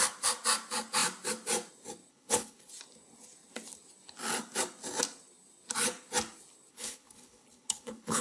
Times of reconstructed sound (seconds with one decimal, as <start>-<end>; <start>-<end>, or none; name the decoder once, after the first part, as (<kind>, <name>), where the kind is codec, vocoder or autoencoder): 2.1-2.7 (codec, HILCodec); 6.7-8.2